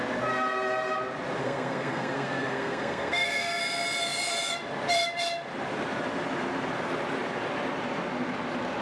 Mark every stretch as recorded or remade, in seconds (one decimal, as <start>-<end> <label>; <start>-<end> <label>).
0.0-1.4 recorded; 1.4-3.6 remade; 3.6-8.8 recorded